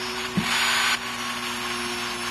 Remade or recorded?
recorded